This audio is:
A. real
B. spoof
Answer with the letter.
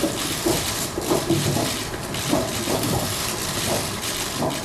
B